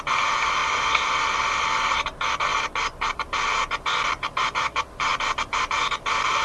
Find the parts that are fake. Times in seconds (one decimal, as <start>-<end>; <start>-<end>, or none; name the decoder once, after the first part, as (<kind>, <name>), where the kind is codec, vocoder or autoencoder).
2.5-3.3 (vocoder, BigVGAN v2)